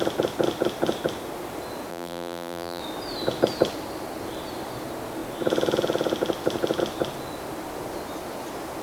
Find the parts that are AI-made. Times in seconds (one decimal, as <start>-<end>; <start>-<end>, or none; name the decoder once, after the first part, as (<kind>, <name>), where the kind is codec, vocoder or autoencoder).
1.9-2.8 (vocoder, BigVGAN v2)